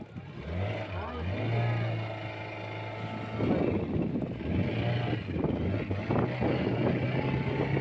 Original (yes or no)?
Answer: yes